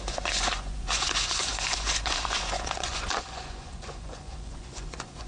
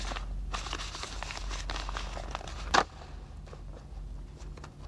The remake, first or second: first